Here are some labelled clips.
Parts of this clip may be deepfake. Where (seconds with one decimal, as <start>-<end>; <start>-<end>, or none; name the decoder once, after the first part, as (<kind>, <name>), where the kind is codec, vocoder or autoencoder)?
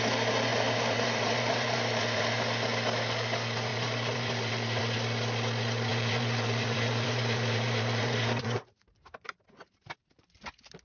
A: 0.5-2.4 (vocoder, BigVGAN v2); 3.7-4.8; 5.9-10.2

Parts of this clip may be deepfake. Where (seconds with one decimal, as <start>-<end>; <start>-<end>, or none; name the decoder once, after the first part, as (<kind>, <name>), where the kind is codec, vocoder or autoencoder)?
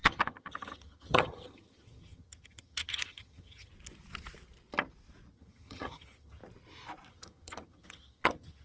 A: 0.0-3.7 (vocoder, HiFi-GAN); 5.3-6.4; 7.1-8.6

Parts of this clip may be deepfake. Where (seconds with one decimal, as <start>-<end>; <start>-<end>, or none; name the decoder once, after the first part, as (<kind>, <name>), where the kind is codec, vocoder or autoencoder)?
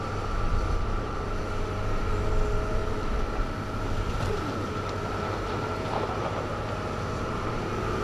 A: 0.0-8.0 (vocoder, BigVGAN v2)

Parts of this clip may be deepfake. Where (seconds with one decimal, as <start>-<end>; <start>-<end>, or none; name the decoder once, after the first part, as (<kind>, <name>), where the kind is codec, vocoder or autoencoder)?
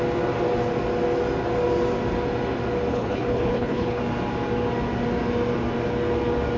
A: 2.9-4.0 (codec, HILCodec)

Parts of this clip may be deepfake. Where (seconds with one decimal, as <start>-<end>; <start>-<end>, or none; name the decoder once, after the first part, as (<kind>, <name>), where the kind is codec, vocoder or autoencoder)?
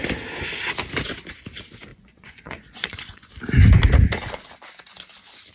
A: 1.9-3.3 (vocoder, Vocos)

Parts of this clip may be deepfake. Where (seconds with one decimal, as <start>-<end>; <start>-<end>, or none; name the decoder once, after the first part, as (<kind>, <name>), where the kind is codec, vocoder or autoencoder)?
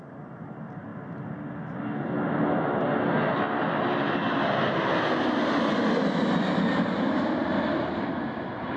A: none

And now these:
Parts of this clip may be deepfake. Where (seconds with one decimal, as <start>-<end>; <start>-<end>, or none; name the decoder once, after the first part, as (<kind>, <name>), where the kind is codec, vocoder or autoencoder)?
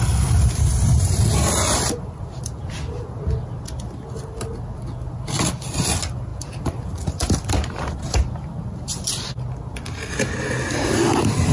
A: none